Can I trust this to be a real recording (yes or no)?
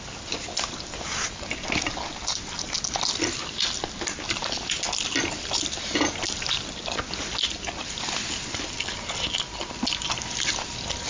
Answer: yes